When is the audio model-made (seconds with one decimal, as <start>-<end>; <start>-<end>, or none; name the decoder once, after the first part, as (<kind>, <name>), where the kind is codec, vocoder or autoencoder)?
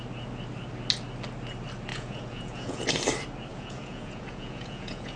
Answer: 1.9-2.9 (vocoder, Vocos); 3.5-5.2